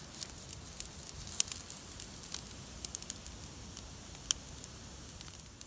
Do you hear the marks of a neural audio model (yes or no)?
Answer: no